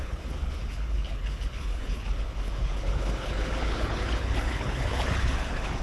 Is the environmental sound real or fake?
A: fake